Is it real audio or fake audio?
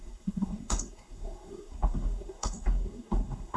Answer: fake